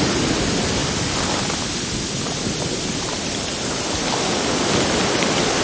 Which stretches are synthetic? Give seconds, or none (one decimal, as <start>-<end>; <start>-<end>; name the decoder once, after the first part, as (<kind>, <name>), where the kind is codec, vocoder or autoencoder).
none